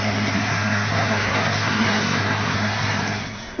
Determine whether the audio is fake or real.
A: fake